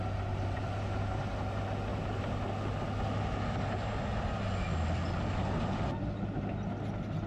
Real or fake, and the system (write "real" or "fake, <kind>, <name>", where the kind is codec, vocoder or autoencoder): real